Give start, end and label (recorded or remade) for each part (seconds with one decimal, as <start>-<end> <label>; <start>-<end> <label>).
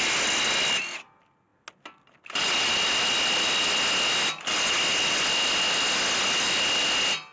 0.0-7.3 recorded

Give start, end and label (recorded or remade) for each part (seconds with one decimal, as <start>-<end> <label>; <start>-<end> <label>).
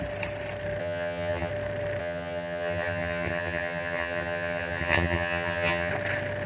0.0-0.8 recorded; 0.8-1.5 remade; 1.5-2.0 recorded; 2.0-5.9 remade; 5.9-6.5 recorded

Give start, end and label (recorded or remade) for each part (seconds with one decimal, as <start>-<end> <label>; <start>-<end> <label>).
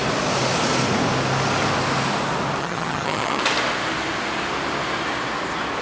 0.0-2.6 recorded; 2.6-3.4 remade; 3.4-5.8 recorded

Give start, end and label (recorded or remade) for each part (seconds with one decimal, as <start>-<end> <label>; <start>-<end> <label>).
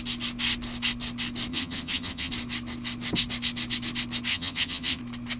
0.0-1.5 recorded; 1.5-2.3 remade; 2.3-4.3 recorded; 4.3-5.0 remade; 5.0-5.4 recorded